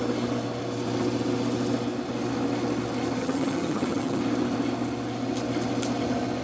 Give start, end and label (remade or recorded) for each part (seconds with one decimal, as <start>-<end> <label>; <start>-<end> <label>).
0.0-3.2 recorded; 3.2-4.2 remade; 4.2-6.4 recorded